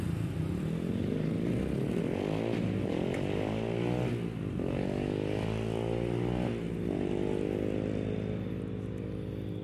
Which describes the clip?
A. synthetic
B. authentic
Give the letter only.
B